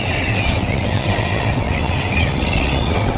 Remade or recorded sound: remade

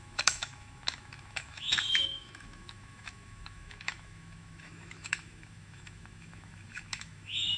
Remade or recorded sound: remade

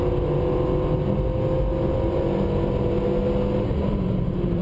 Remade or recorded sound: recorded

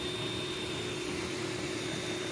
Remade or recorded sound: recorded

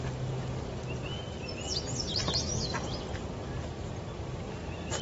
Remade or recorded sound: recorded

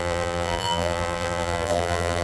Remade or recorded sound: remade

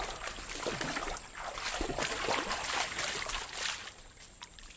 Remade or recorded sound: recorded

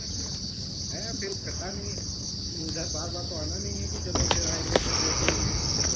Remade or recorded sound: recorded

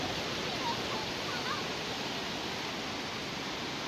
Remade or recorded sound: recorded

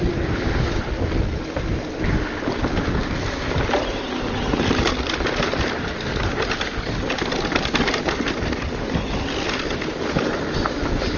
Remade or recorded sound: recorded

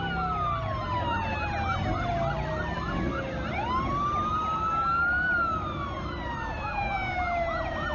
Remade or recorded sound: recorded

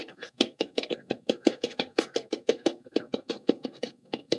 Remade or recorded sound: remade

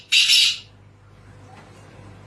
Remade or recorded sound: recorded